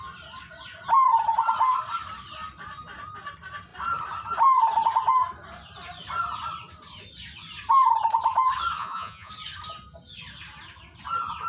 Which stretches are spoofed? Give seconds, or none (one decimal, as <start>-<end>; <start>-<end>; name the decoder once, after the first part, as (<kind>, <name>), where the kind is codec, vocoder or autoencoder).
8.8-9.3 (vocoder, Vocos)